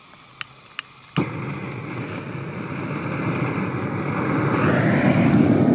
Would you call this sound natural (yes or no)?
yes